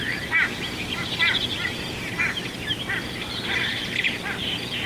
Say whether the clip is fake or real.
real